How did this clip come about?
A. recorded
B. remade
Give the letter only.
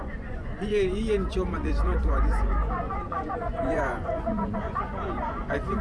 B